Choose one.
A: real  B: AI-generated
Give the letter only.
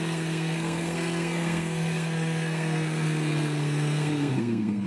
B